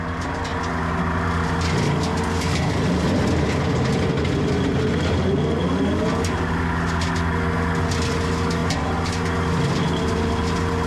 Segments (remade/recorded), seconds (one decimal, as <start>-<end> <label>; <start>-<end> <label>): 0.0-10.9 recorded